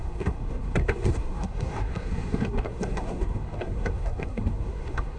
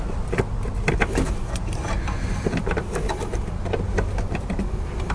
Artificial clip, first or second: first